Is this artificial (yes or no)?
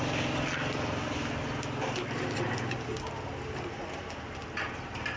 no